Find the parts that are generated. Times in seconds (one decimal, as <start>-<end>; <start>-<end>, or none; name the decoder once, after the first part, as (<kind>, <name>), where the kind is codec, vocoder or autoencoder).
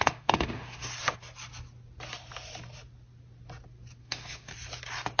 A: 0.0-0.9 (autoencoder, DAC-VAE); 4.0-4.5